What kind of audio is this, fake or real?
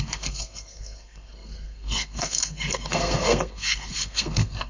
fake